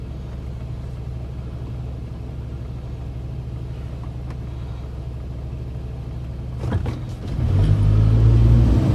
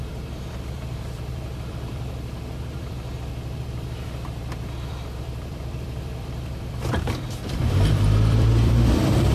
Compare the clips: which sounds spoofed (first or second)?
second